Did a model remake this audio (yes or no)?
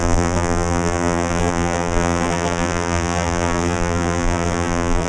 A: yes